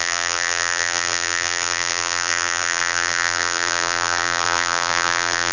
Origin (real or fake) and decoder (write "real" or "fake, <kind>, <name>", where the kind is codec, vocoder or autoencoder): fake, vocoder, BigVGAN v2